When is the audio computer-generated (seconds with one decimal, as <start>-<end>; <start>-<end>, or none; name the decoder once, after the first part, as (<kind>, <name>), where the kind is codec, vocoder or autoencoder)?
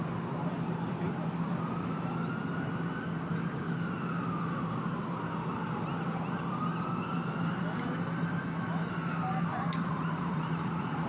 9.8-11.1 (vocoder, Vocos)